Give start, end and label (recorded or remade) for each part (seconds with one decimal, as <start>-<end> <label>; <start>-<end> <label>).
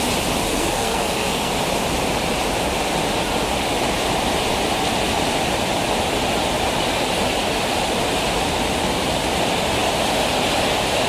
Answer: 0.0-0.5 recorded; 0.5-1.5 remade; 1.5-11.1 recorded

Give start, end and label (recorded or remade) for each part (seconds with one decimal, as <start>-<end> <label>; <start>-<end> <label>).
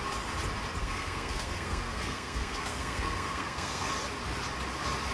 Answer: 0.0-0.8 recorded; 0.8-3.9 remade; 3.9-5.1 recorded